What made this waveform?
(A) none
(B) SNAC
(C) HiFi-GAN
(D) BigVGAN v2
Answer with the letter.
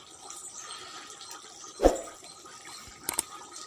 A